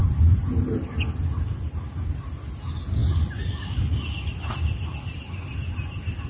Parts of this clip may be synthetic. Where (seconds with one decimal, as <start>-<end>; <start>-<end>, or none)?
none